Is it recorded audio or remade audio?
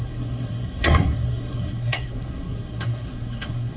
remade